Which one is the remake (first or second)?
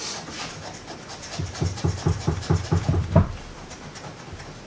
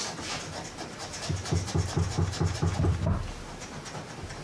first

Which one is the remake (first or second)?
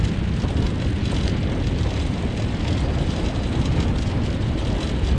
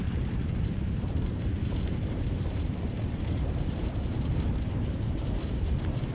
second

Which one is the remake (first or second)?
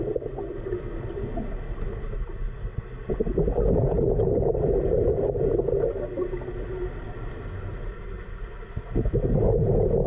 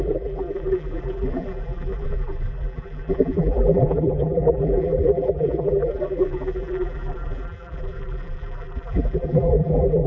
second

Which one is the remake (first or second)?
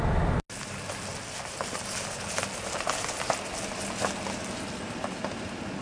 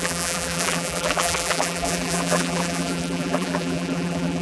second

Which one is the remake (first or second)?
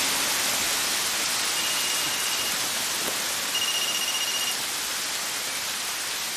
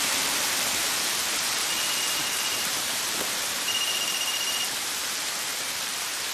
second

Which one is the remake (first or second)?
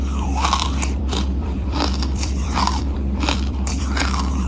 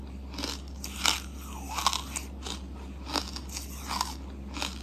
first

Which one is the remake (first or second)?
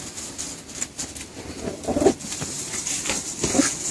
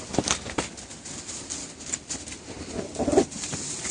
second